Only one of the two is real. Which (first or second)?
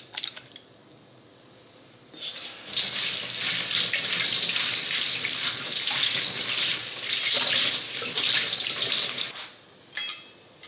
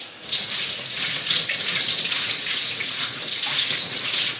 first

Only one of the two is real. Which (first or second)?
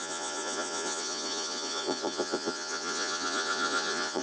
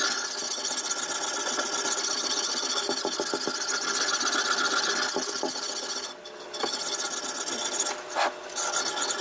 second